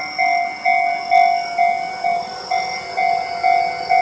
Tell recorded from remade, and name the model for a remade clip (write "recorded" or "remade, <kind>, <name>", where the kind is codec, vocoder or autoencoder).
recorded